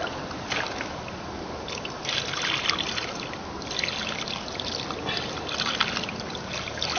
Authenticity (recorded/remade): recorded